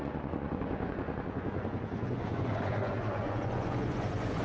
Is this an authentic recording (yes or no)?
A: no